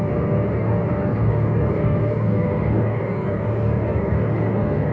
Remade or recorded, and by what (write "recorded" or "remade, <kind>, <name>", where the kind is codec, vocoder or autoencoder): remade, codec, DAC